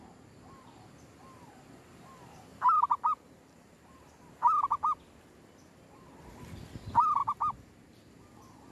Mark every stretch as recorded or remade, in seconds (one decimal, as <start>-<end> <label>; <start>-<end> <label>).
0.0-8.7 recorded